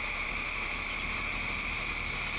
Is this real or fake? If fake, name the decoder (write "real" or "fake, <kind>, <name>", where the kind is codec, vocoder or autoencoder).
real